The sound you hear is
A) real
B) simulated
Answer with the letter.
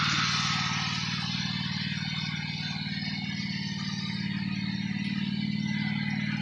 A